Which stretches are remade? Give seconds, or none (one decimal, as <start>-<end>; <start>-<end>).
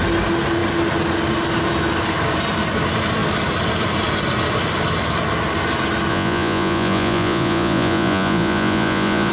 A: 6.1-9.3